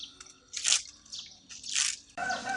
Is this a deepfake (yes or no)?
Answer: no